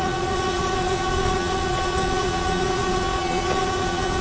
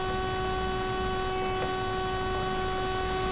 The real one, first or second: second